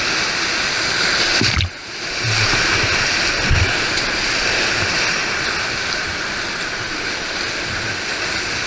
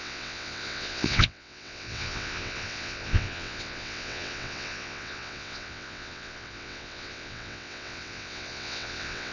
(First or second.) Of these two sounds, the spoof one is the second